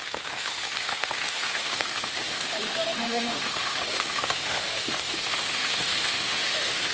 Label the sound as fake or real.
fake